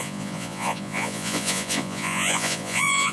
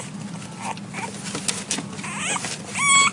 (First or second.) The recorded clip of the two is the second